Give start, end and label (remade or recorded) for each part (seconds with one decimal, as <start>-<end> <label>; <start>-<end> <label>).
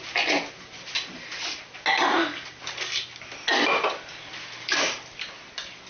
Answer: 0.0-5.9 recorded